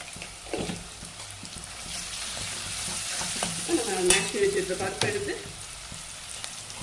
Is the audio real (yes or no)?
no